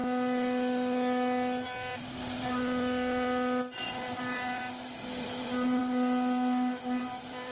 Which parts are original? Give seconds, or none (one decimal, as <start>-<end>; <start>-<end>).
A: 0.0-7.5